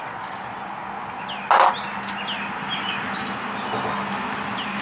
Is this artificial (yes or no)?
no